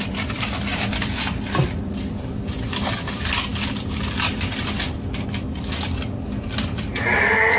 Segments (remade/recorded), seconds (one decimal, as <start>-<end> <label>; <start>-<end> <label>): 0.0-7.6 recorded